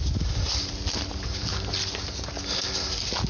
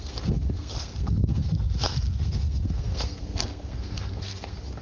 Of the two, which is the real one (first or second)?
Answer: first